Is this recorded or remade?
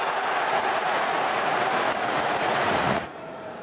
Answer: remade